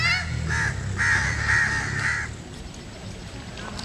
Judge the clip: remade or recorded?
recorded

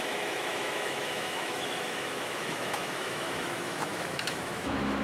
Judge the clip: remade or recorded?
remade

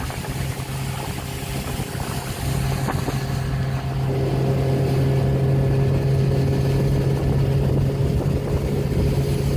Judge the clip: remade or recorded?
recorded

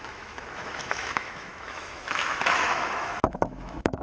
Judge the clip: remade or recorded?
remade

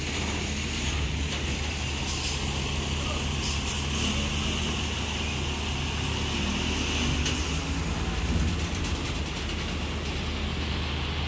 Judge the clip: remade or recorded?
recorded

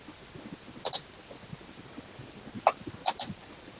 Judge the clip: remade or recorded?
recorded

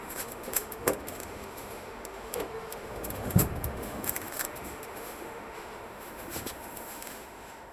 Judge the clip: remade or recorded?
remade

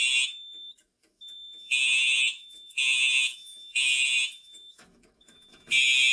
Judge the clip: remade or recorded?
remade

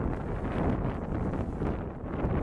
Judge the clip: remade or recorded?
recorded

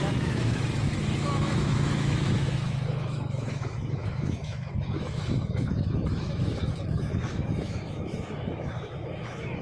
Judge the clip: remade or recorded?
remade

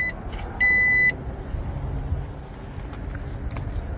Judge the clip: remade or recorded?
recorded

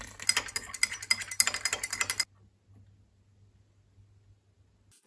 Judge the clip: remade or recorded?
recorded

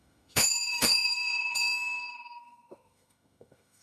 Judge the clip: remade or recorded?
remade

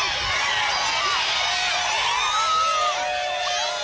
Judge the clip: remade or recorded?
recorded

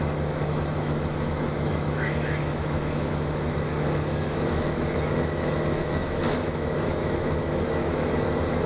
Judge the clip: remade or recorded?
remade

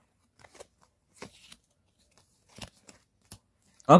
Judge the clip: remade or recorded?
recorded